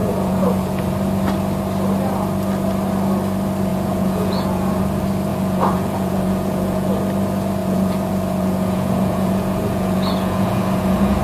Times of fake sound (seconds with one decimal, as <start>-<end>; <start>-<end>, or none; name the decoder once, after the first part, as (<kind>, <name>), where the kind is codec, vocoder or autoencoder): 0.0-0.9 (vocoder, Vocos); 3.7-4.8; 5.3-6.9; 7.6-11.2